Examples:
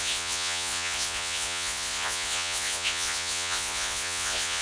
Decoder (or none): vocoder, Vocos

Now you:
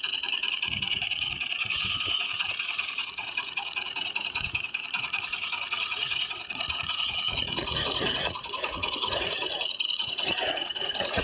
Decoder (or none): vocoder, Vocos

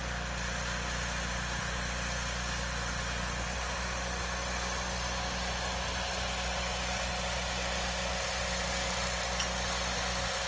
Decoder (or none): none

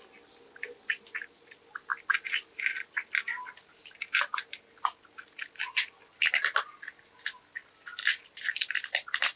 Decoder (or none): none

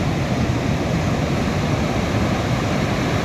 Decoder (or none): none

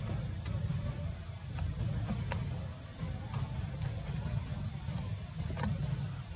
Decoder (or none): none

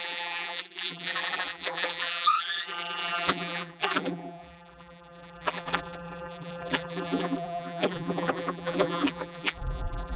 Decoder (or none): vocoder, BigVGAN v2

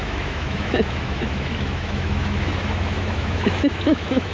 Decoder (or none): autoencoder, DAC-VAE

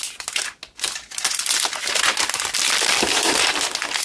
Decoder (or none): none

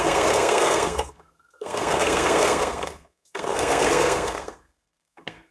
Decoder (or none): codec, SNAC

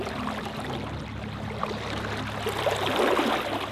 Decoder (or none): none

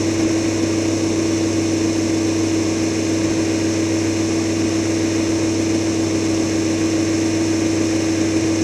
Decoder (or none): none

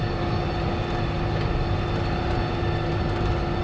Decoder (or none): none